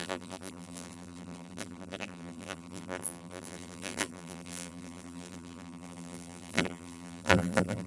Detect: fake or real fake